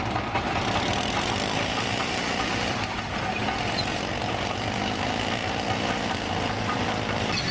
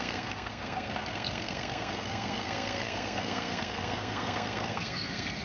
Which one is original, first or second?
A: first